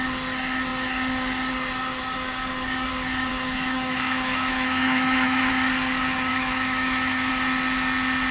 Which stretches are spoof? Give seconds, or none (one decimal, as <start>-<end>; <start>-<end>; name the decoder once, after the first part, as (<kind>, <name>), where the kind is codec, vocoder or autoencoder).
3.3-5.5 (autoencoder, DAC-VAE); 6.3-7.3